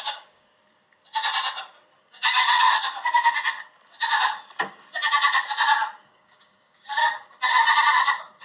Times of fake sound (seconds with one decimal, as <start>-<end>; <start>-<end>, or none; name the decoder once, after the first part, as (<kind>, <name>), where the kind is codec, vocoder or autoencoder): 0.0-0.5 (codec, DAC); 2.0-2.7; 6.1-7.0